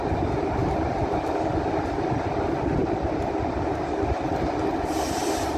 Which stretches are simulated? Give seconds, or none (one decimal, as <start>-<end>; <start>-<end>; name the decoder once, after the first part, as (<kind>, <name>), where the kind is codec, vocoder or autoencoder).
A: 0.6-1.5 (vocoder, BigVGAN v2); 2.8-3.8